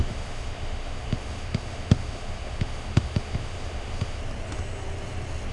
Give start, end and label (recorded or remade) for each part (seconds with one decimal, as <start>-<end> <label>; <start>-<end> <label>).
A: 0.0-4.2 remade; 4.2-5.5 recorded